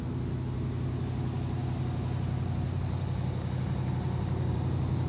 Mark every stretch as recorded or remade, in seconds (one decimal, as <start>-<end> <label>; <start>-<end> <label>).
0.0-5.1 recorded